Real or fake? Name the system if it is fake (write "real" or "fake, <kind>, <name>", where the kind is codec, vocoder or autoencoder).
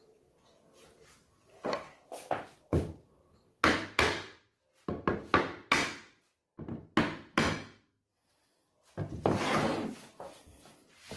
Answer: real